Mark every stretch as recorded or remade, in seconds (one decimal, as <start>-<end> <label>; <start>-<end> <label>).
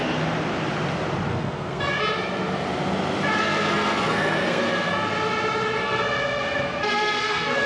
0.0-1.3 recorded; 1.3-1.8 remade; 1.8-3.4 recorded; 3.4-4.9 remade; 4.9-5.8 recorded; 5.8-7.7 remade